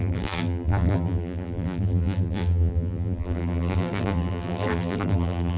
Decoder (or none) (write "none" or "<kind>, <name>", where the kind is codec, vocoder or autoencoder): vocoder, BigVGAN v2